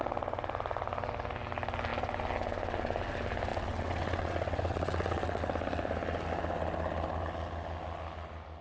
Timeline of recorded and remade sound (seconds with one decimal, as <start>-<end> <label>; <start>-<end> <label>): 0.0-3.5 recorded; 3.5-5.4 remade; 5.4-8.6 recorded